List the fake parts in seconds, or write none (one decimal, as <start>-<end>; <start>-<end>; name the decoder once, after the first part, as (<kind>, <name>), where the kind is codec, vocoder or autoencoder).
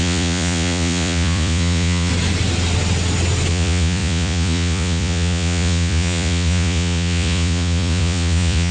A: 0.0-2.1 (vocoder, Vocos); 3.5-8.7